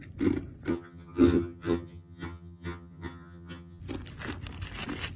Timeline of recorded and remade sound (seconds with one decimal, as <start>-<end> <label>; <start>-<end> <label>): 0.0-0.7 recorded; 0.7-3.8 remade; 3.8-5.2 recorded